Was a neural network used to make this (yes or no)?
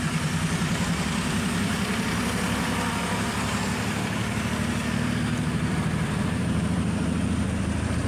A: yes